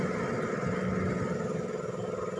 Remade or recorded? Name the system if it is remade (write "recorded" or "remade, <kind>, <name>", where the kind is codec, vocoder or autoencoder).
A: recorded